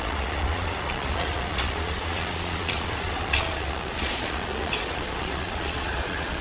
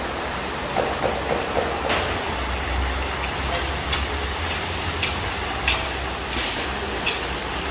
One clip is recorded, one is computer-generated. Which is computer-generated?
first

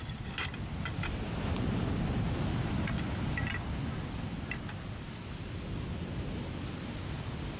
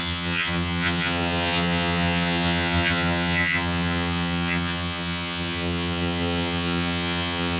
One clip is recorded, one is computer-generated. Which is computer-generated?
second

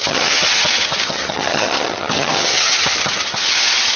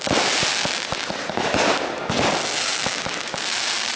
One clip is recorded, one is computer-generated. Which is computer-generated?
first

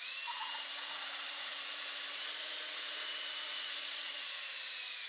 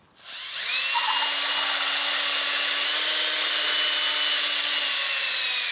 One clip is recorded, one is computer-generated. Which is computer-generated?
first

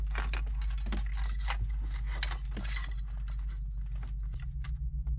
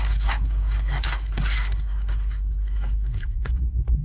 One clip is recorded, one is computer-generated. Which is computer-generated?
second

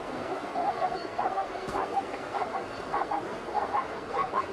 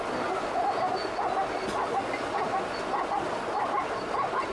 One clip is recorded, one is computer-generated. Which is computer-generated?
first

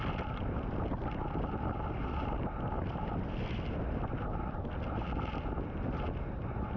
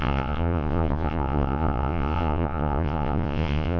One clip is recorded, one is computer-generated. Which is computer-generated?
second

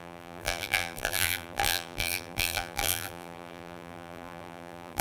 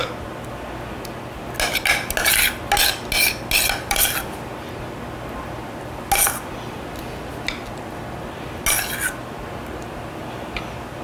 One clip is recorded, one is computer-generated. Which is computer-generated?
first